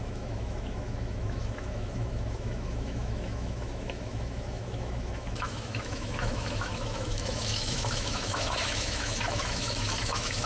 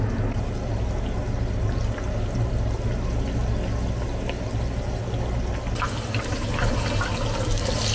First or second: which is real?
second